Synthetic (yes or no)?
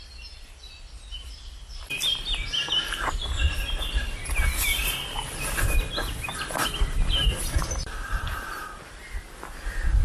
no